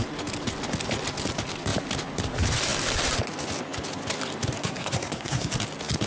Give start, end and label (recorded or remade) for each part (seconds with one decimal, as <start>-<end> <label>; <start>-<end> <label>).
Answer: 0.0-4.6 recorded; 4.6-5.5 remade; 5.5-6.1 recorded

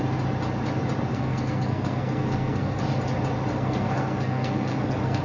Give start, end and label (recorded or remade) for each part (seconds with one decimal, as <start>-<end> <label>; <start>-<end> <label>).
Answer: 0.0-1.1 recorded; 1.1-2.8 remade; 2.8-3.5 recorded; 3.5-5.2 remade

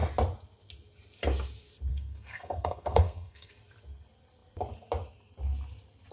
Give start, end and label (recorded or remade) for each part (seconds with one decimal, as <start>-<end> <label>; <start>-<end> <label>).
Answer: 0.0-1.9 recorded; 1.9-3.5 remade; 3.5-6.1 recorded

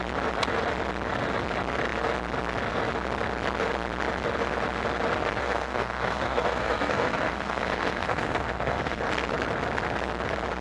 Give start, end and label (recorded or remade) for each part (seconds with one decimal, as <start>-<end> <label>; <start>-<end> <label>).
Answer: 0.0-5.4 recorded; 5.4-9.0 remade; 9.0-10.6 recorded

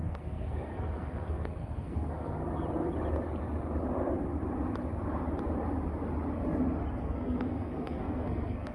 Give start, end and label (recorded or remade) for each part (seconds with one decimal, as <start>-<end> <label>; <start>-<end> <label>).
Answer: 0.0-2.4 remade; 2.4-7.0 recorded; 7.0-8.7 remade

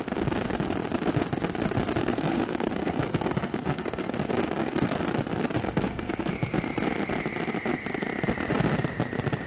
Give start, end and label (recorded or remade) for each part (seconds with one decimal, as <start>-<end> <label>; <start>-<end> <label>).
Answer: 0.0-2.0 recorded; 2.0-5.0 remade; 5.0-5.6 recorded; 5.6-6.3 remade; 6.3-9.5 recorded

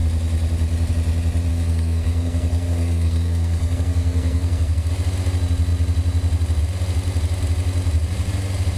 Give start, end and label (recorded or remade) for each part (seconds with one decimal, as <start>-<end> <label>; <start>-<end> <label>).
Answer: 0.0-1.5 recorded; 1.5-4.9 remade; 4.9-8.8 recorded